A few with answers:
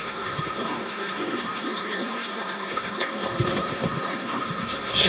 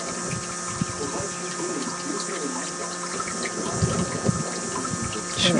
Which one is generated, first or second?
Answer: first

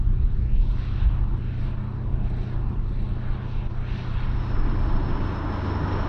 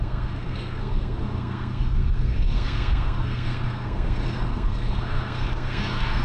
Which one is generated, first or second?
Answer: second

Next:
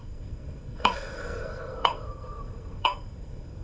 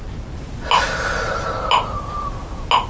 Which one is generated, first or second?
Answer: first